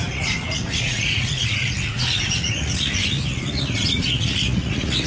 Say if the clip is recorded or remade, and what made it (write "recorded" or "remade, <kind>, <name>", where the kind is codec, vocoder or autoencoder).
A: remade, vocoder, Vocos